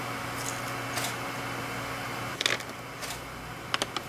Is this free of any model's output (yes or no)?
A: yes